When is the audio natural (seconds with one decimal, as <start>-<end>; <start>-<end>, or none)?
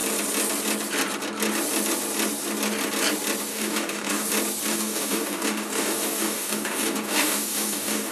0.0-3.5; 4.3-4.7